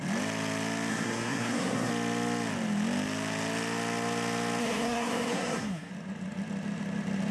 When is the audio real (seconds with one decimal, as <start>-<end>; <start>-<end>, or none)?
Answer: 0.0-0.9; 1.9-4.6; 5.9-7.3